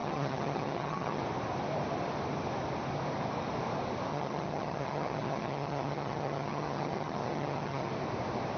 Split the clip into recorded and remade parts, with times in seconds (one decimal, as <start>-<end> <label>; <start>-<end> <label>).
0.0-1.2 remade; 1.2-4.1 recorded; 4.1-7.9 remade; 7.9-8.6 recorded